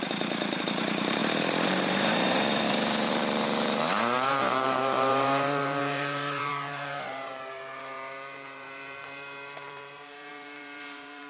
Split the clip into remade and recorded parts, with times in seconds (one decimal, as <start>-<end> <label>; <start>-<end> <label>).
0.0-11.3 remade